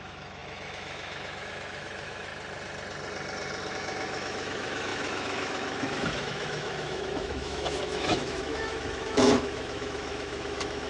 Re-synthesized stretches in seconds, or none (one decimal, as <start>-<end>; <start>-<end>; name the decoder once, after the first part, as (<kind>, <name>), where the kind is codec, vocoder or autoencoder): 0.0-2.3 (autoencoder, DAC-VAE); 3.7-10.9